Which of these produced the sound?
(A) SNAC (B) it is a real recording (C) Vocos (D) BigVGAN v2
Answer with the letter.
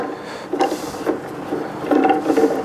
B